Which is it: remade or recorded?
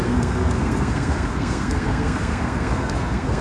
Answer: remade